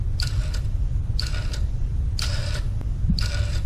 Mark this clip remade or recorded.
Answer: recorded